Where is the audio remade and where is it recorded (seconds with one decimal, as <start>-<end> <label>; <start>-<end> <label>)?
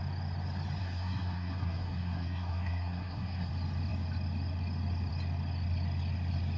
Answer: 0.0-0.8 recorded; 0.8-3.5 remade; 3.5-6.6 recorded